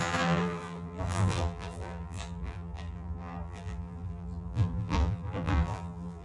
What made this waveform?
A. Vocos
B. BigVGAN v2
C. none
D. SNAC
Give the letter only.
B